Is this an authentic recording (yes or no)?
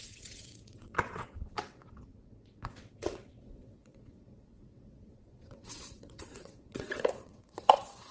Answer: no